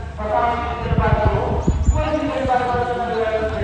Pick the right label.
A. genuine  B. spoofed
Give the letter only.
A